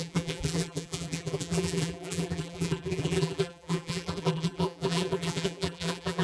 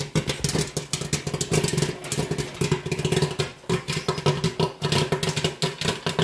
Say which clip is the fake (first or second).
first